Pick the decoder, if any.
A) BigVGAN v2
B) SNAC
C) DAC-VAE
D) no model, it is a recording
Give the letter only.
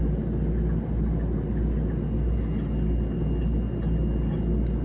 D